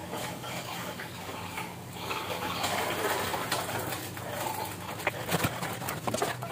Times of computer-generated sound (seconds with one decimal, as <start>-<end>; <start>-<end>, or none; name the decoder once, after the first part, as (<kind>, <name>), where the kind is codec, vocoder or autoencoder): 0.0-2.8 (codec, DAC)